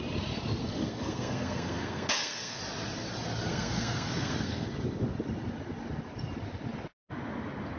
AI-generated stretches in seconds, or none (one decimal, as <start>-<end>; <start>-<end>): 0.6-2.6; 3.5-4.7